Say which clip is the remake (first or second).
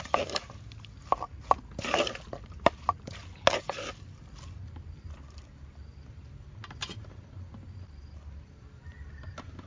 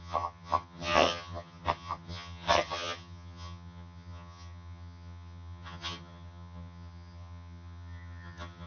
second